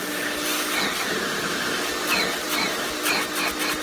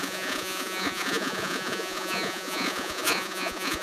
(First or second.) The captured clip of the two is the first